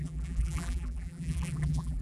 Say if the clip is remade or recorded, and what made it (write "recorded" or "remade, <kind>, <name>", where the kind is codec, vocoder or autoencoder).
remade, vocoder, BigVGAN v2